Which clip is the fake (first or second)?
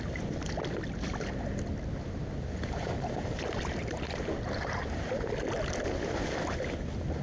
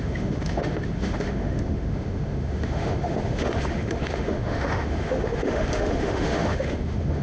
second